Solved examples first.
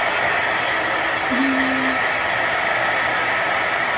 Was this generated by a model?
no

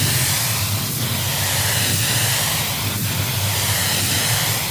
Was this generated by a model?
no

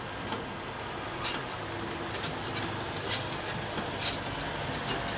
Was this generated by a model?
no